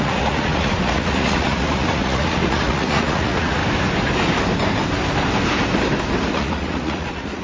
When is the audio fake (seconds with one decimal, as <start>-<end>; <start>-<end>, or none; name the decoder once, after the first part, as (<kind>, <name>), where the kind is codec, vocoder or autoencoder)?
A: 0.0-3.6 (vocoder, Vocos); 6.3-7.4